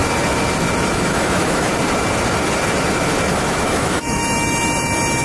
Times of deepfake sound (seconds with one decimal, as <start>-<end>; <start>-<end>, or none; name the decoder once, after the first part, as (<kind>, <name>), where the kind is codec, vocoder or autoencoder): 0.9-1.7 (autoencoder, DAC-VAE); 3.3-4.2